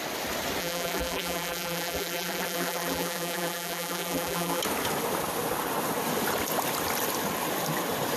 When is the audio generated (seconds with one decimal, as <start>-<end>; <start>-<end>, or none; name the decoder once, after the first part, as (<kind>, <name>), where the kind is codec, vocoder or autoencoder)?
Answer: 0.6-4.6 (vocoder, BigVGAN v2)

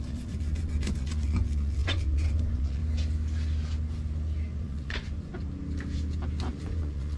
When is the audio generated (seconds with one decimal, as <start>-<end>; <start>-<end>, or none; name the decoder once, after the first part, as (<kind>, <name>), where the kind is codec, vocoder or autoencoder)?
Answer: 0.0-2.8 (vocoder, Vocos); 4.6-5.3; 6.5-7.2

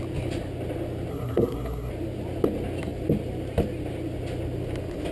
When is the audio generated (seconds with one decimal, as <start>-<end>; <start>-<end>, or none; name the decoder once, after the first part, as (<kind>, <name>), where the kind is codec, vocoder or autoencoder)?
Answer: 1.1-1.9 (codec, SNAC)